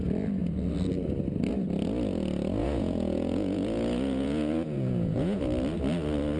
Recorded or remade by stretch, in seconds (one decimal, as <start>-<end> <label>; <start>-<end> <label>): 0.0-2.6 recorded; 2.6-5.4 remade; 5.4-6.4 recorded